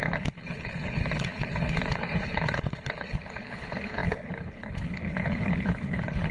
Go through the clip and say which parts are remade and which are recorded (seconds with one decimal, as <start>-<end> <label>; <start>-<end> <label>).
0.0-6.3 remade